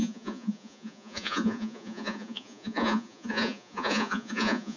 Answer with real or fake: fake